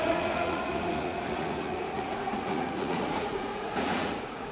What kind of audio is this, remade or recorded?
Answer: remade